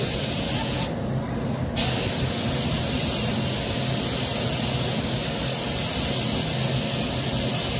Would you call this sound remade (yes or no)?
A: no